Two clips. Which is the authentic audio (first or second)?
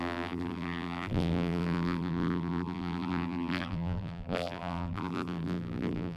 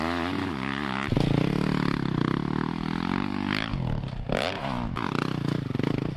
second